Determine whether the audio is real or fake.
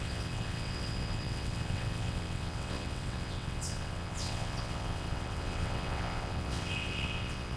fake